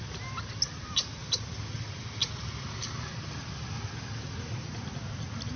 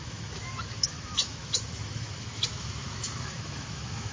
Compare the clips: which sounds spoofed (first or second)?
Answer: second